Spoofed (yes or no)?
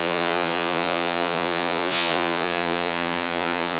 yes